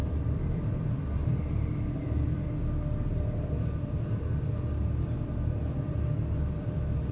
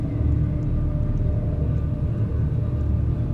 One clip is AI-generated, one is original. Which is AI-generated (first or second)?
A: first